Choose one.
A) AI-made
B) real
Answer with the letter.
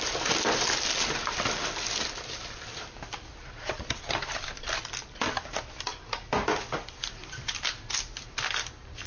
A